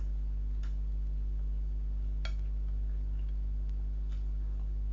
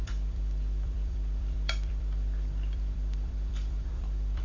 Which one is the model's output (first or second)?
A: second